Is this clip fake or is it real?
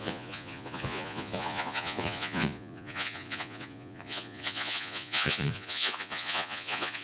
fake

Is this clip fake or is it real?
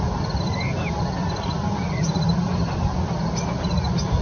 real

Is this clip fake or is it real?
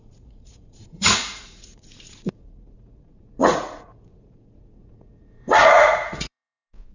fake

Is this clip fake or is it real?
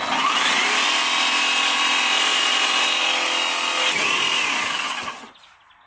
real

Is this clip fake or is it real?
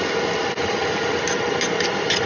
real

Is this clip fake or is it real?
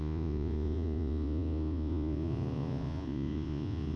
fake